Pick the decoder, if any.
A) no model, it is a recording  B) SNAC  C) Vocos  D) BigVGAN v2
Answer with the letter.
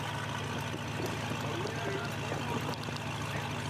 A